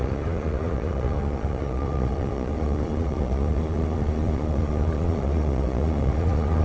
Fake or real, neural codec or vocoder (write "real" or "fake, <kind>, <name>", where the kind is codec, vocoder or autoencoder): fake, vocoder, Vocos